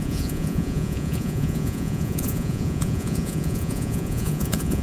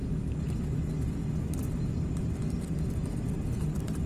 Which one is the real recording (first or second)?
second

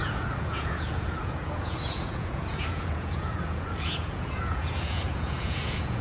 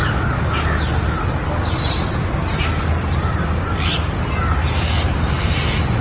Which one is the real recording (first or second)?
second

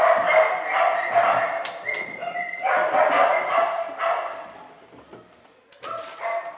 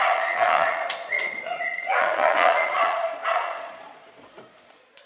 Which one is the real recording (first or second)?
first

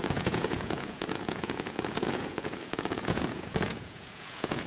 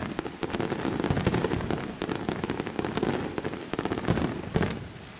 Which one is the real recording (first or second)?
second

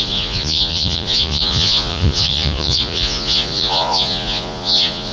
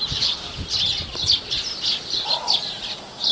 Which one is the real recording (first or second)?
second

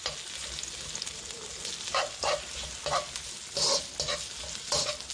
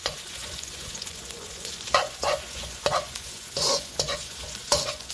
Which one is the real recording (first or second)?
first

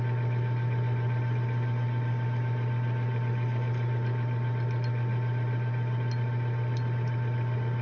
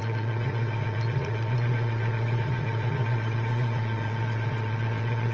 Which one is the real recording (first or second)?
first